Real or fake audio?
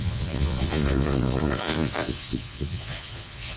fake